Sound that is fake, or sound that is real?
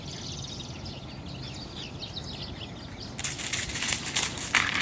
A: real